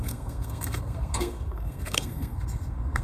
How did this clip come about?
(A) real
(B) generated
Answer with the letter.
B